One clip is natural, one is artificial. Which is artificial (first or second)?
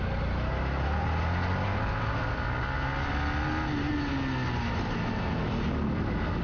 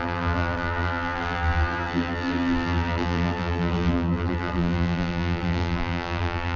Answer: second